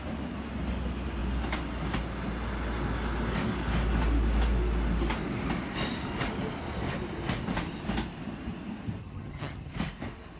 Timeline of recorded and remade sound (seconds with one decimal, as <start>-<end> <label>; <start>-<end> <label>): 0.0-9.0 recorded; 9.0-9.7 remade; 9.7-10.4 recorded